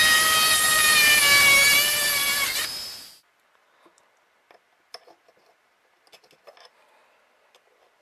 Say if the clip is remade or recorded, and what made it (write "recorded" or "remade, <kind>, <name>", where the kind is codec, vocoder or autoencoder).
recorded